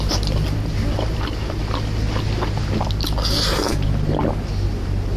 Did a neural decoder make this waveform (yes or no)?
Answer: no